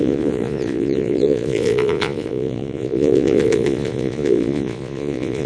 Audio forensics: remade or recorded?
remade